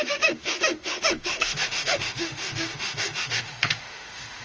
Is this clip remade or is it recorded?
remade